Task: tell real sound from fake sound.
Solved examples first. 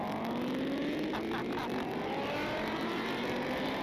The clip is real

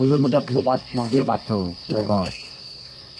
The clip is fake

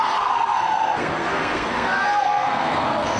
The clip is fake